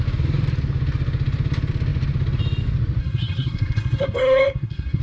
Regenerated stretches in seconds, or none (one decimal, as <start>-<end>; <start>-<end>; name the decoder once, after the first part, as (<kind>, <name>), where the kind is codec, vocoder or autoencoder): 3.0-5.0 (codec, SNAC)